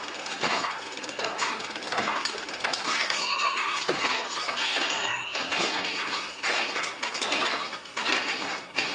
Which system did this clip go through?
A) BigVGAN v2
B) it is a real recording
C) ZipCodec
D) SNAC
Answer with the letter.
D